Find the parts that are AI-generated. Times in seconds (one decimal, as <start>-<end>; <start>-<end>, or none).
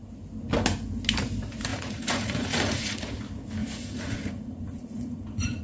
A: 1.7-3.2; 3.6-5.6